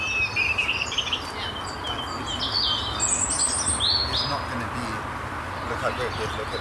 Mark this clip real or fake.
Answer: real